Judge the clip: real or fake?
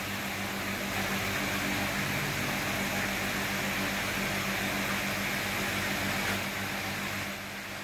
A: real